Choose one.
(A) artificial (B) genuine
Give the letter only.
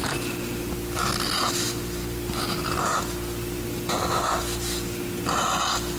B